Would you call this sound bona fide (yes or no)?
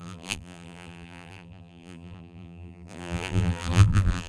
no